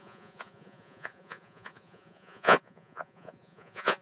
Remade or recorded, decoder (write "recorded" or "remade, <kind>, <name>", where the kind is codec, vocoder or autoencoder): remade, vocoder, Vocos